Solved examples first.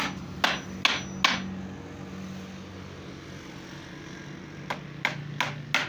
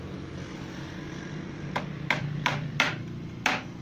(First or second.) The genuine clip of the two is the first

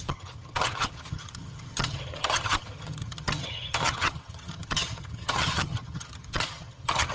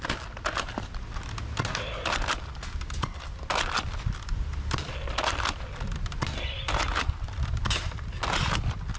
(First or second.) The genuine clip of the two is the second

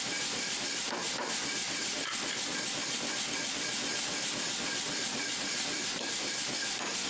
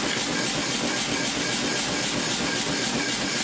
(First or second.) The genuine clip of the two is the second